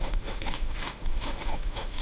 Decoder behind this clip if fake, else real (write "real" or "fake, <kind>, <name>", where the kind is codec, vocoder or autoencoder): fake, autoencoder, DAC-VAE